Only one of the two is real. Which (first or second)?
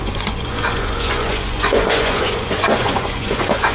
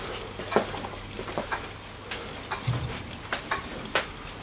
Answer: second